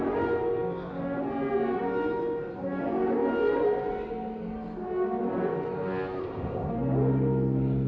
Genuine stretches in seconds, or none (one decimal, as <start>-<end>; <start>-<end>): 0.0-6.2; 6.7-7.9